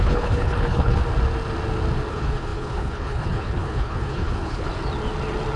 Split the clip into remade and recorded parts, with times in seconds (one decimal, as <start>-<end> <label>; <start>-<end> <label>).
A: 0.0-1.0 remade; 1.0-2.1 recorded; 2.1-4.7 remade; 4.7-5.6 recorded